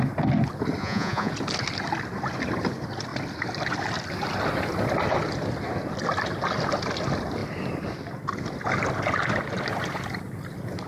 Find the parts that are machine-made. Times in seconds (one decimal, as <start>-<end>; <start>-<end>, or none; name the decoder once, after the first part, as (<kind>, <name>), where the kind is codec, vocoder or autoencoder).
0.8-1.3 (vocoder, Vocos)